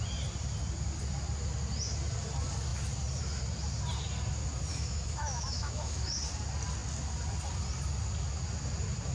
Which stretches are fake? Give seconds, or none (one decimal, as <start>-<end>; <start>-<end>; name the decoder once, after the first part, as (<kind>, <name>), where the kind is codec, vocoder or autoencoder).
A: 4.7-6.1 (autoencoder, DAC-VAE)